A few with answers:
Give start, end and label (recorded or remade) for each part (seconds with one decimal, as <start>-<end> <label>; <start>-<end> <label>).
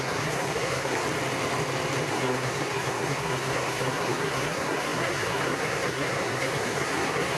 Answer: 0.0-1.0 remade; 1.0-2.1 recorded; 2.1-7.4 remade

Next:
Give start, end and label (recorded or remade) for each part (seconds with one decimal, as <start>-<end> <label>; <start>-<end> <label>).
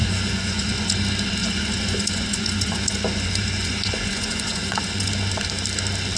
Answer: 0.0-0.9 remade; 0.9-1.4 recorded; 1.4-5.1 remade; 5.1-6.2 recorded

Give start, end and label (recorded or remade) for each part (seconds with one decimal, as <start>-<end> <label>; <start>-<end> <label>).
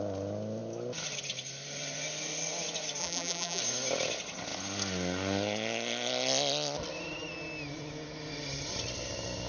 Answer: 0.0-3.0 recorded; 3.0-3.6 remade; 3.6-9.5 recorded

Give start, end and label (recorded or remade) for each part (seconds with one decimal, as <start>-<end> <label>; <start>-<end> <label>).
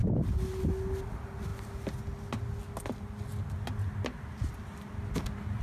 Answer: 0.0-5.6 recorded